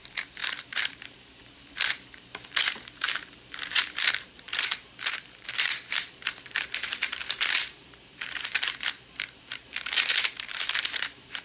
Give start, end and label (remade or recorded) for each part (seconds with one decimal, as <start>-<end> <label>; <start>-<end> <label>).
0.0-11.4 remade